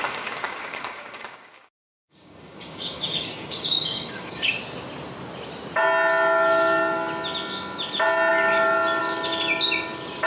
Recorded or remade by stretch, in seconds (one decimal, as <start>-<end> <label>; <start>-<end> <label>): 0.0-4.5 remade; 4.5-10.3 recorded